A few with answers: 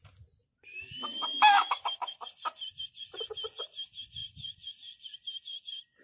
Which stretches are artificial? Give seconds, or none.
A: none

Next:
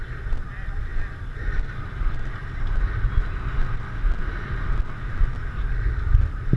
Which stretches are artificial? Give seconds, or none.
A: none

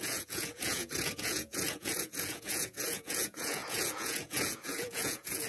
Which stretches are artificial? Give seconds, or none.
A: 0.0-5.5 (vocoder, Vocos)

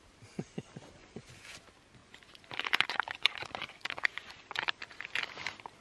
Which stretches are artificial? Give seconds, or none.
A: 1.0-1.6 (vocoder, Vocos); 2.0-4.8

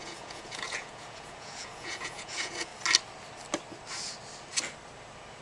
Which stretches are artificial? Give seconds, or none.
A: 0.0-2.7 (vocoder, Vocos)

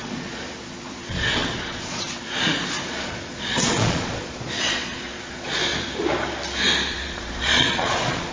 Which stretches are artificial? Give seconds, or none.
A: 0.0-5.7 (vocoder, Vocos); 6.9-8.3

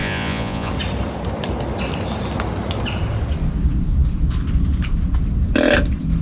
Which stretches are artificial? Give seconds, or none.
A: 0.0-0.7 (vocoder, Vocos)

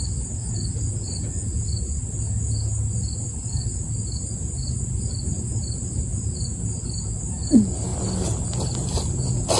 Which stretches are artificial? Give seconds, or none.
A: none